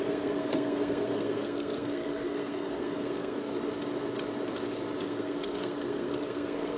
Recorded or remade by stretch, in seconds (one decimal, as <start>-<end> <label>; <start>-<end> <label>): 0.0-3.5 remade; 3.5-5.0 recorded; 5.0-6.8 remade